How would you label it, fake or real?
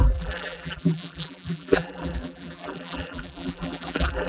fake